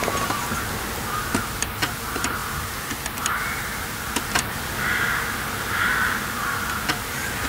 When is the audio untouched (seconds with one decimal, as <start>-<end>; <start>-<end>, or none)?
0.0-7.5

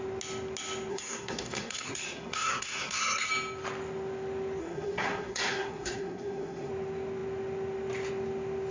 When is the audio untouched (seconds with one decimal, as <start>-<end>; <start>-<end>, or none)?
0.0-0.9; 3.3-4.6; 6.7-8.7

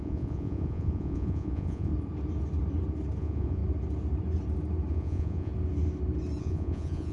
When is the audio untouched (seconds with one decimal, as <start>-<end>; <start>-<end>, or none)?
1.9-3.2; 3.6-4.9; 5.5-6.4

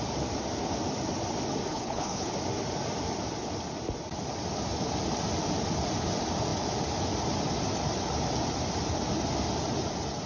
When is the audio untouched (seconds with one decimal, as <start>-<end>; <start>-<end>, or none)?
0.0-1.7; 2.3-10.3